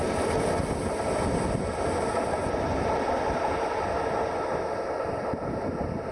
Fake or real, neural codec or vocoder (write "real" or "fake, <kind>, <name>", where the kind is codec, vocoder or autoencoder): real